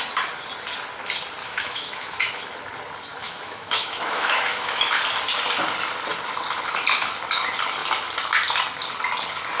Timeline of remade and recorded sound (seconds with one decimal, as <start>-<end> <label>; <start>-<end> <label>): 0.0-1.4 recorded; 1.4-2.5 remade; 2.5-3.1 recorded; 3.1-5.0 remade; 5.0-9.6 recorded